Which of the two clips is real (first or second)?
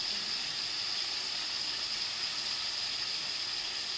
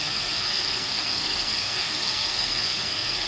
first